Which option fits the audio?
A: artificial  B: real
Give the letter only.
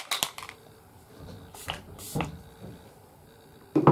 A